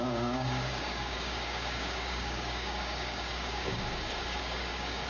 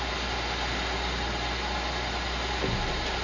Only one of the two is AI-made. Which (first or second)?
first